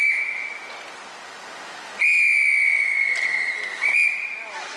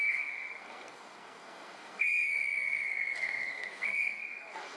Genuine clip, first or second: first